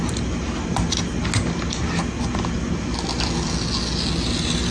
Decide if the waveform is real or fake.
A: real